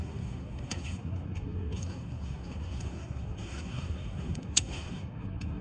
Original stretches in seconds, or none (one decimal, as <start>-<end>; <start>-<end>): none